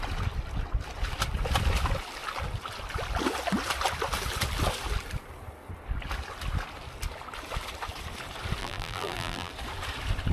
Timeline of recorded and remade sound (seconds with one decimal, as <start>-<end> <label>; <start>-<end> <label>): 0.0-8.6 recorded; 8.6-9.5 remade; 9.5-10.3 recorded